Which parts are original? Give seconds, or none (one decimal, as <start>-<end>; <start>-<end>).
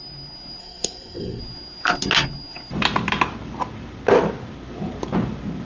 0.0-0.6; 1.4-5.6